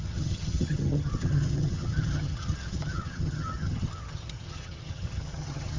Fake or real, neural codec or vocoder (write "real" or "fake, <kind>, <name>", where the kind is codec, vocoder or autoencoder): fake, vocoder, HiFi-GAN